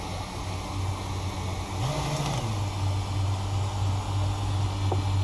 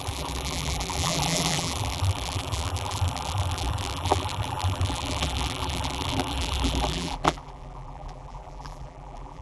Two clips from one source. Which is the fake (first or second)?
second